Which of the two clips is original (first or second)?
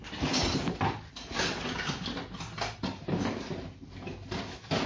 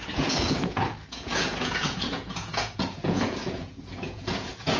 first